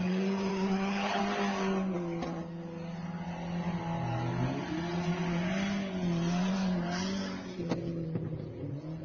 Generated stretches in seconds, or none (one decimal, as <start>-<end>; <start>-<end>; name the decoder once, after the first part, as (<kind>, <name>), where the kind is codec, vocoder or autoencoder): 0.5-1.2 (codec, HILCodec)